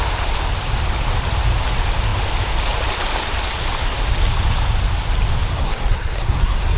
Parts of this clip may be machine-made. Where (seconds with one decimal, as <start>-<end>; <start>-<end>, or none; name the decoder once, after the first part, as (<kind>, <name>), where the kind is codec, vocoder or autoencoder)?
5.5-6.8 (codec, SNAC)